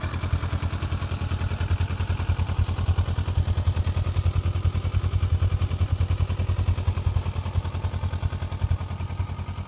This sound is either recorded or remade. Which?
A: recorded